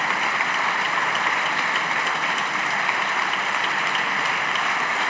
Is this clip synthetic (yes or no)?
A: yes